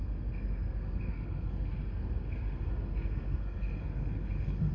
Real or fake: fake